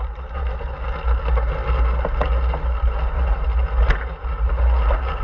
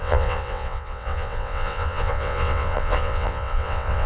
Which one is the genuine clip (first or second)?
first